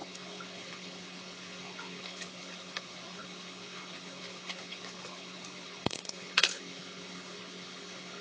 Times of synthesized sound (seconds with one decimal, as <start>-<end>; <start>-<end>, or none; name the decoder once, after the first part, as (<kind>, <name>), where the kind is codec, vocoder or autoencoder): 0.0-8.2 (codec, HILCodec)